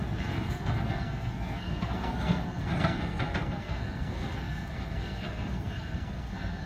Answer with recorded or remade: remade